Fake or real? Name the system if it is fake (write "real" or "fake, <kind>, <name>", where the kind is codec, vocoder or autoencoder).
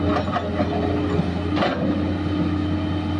real